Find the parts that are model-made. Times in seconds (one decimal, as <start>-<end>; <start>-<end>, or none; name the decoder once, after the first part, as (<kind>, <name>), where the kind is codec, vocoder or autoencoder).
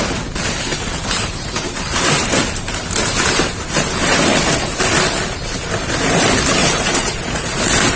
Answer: 6.6-7.6 (vocoder, Vocos)